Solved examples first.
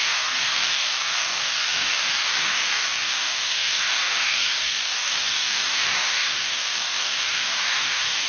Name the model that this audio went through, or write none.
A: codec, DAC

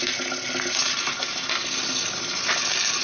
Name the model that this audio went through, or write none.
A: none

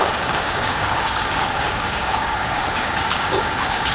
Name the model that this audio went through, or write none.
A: codec, DAC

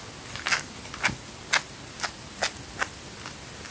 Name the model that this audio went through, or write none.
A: none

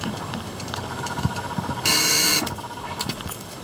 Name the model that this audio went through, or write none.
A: codec, DAC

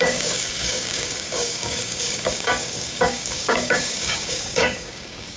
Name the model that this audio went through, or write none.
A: codec, DAC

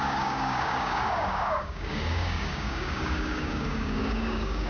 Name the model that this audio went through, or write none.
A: codec, DAC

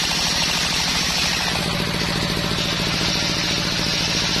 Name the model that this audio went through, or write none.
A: none